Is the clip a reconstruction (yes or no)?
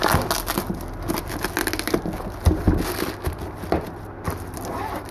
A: no